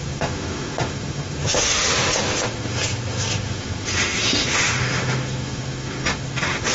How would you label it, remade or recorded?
remade